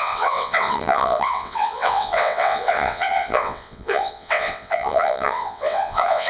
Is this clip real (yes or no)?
no